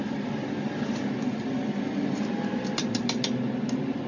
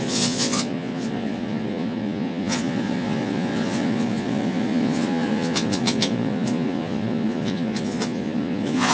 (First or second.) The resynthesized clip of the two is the second